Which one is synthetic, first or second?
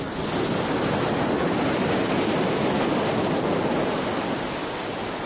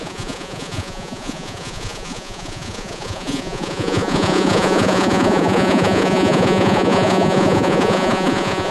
second